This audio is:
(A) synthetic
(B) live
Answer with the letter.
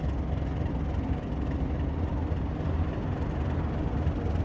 B